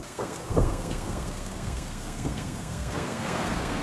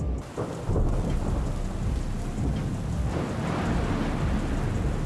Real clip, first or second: second